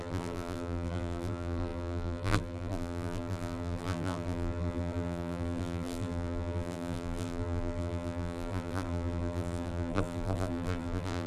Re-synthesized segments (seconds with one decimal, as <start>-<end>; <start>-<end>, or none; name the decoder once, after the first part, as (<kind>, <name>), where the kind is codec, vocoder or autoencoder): 0.0-11.3 (vocoder, BigVGAN v2)